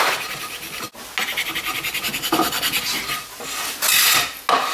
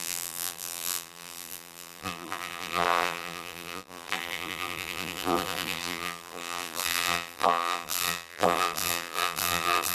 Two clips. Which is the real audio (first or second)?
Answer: first